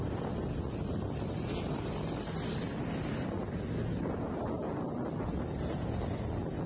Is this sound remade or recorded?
recorded